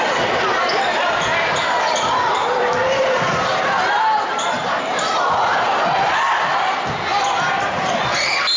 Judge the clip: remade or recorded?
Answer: remade